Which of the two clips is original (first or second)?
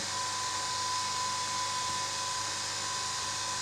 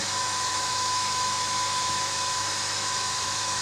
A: first